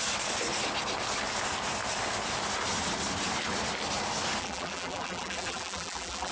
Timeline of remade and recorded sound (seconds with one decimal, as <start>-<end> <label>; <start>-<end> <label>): 0.0-4.4 recorded; 4.4-6.3 remade